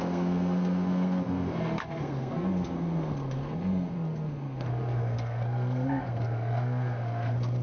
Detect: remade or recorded remade